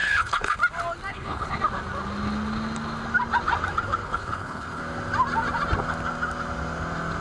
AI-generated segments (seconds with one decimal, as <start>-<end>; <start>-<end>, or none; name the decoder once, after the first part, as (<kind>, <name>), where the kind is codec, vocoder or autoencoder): 0.0-0.6 (codec, HILCodec); 1.1-1.6; 4.0-4.8